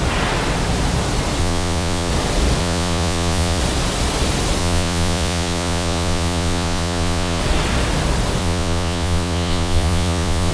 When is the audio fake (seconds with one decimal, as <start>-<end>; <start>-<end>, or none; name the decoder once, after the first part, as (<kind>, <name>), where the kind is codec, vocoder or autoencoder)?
1.4-2.1 (vocoder, Vocos); 2.6-3.6; 4.6-7.4; 8.4-10.5